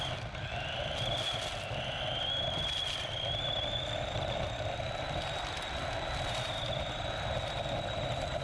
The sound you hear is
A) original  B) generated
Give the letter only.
A